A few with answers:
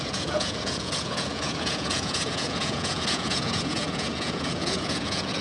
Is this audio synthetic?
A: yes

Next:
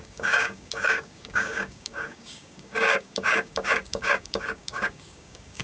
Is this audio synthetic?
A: yes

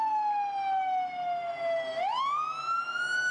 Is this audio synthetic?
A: no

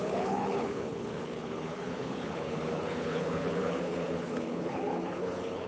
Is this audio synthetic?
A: yes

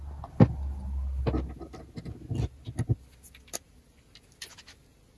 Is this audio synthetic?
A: no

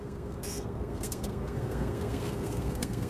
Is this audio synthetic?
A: yes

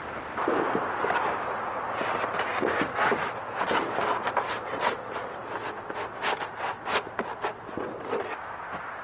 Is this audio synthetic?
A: no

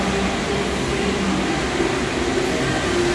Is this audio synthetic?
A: no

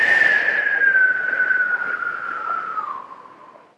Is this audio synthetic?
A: no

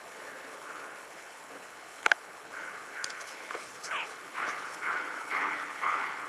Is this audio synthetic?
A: yes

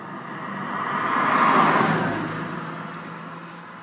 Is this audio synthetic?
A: no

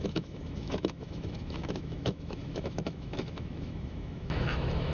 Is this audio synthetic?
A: yes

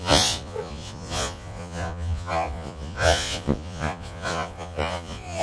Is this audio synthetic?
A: yes